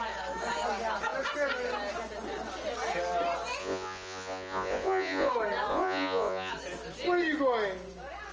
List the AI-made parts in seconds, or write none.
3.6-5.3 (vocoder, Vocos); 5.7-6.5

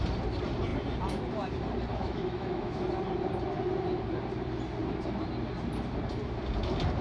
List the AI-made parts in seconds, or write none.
1.9-2.8 (autoencoder, DAC-VAE)

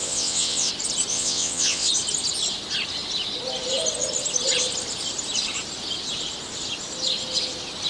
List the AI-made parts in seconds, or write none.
0.0-0.7 (vocoder, WaveNeXt); 1.1-1.9

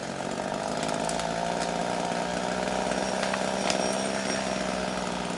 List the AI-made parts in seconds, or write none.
none

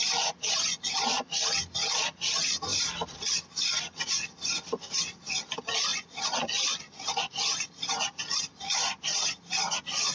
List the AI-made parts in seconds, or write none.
2.7-4.9 (vocoder, BigVGAN v2); 5.9-7.2

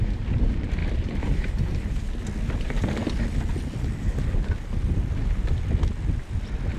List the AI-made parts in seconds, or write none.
none

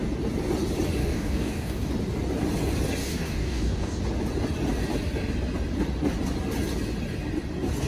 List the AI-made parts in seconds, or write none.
1.0-1.9 (codec, DAC); 3.0-4.0

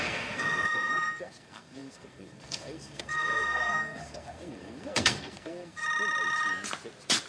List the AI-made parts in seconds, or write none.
0.0-5.8 (codec, SNAC)